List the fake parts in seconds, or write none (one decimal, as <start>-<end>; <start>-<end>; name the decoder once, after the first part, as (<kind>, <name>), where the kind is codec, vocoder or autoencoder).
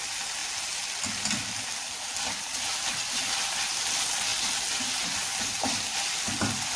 none